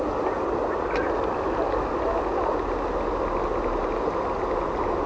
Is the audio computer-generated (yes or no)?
no